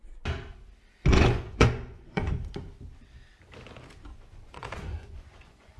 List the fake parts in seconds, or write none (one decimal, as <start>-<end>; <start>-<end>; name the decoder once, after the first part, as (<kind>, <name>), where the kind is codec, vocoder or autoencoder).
1.1-2.4 (vocoder, Vocos); 4.1-5.8